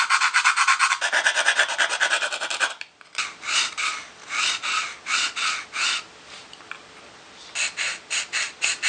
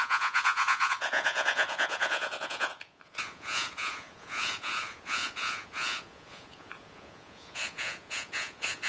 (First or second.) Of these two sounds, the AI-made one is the second